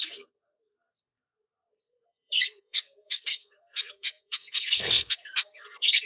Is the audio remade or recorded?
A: remade